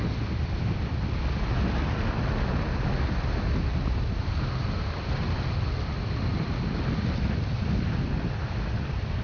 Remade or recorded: recorded